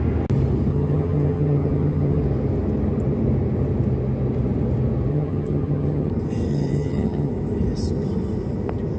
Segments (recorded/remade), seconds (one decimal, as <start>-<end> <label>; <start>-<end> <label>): 0.0-0.7 recorded; 0.7-2.2 remade; 2.2-5.1 recorded; 5.1-6.1 remade; 6.1-6.5 recorded; 6.5-7.3 remade; 7.3-9.0 recorded